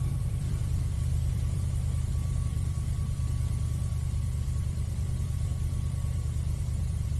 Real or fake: fake